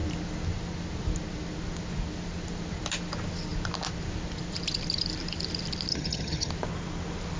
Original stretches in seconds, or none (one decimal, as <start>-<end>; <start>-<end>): 0.0-5.9; 6.5-7.4